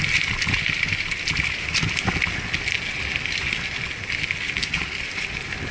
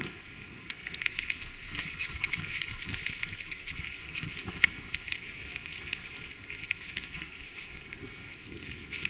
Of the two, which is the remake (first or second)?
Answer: second